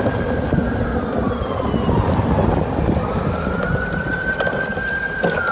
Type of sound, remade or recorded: recorded